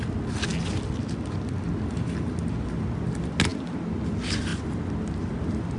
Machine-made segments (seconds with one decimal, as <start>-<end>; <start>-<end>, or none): none